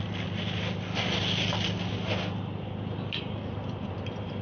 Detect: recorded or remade recorded